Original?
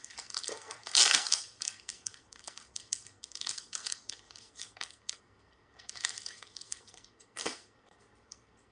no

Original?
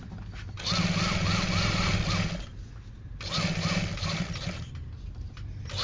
yes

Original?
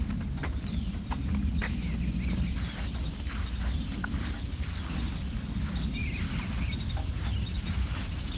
yes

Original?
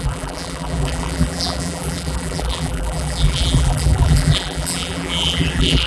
no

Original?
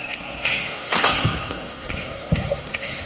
no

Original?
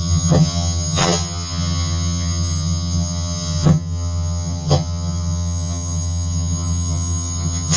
no